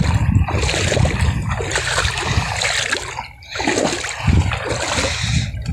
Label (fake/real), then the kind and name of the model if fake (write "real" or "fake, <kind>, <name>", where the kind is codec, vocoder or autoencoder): real